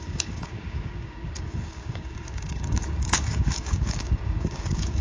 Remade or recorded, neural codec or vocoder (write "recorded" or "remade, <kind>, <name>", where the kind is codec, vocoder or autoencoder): remade, codec, DAC